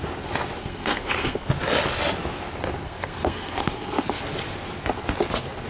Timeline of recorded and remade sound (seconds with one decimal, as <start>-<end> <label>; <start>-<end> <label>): 0.0-0.6 recorded; 0.6-1.5 remade; 1.5-2.8 recorded; 2.8-4.2 remade; 4.2-5.7 recorded